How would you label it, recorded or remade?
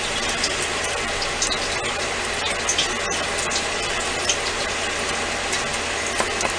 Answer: recorded